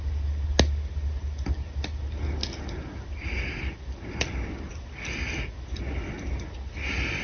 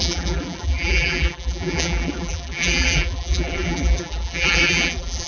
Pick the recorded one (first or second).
first